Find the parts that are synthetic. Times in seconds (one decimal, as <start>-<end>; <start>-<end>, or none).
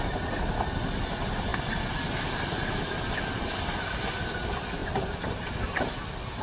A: none